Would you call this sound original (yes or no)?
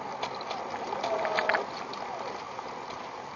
yes